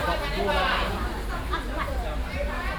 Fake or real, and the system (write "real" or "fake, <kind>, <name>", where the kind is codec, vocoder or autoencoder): fake, vocoder, BigVGAN v2